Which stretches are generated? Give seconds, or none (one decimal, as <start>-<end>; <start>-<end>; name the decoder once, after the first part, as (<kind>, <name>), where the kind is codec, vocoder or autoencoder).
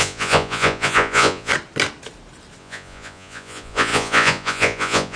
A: 0.0-1.5 (vocoder, Vocos); 2.6-5.2